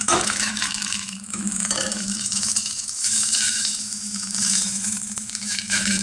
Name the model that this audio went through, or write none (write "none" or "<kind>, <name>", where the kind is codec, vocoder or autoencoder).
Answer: autoencoder, DAC-VAE